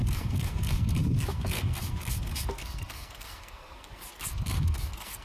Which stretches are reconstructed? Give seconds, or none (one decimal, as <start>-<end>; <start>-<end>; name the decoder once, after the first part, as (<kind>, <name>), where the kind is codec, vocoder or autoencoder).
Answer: 0.0-5.2 (codec, SNAC)